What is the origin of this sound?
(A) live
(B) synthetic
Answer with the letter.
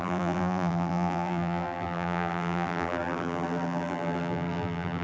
B